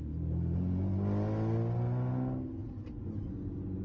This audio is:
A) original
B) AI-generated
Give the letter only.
A